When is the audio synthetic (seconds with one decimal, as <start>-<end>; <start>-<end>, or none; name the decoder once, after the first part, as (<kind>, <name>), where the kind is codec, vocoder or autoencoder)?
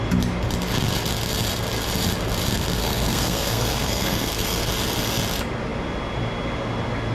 2.8-4.7 (codec, SNAC)